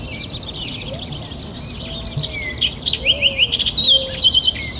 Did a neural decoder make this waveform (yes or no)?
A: no